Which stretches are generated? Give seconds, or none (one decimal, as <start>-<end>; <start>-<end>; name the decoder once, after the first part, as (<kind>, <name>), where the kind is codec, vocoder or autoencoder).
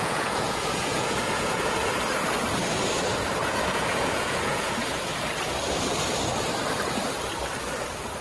0.0-1.8 (vocoder, Vocos); 3.4-5.1